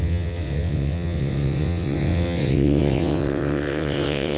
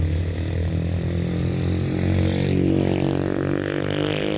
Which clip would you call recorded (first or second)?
second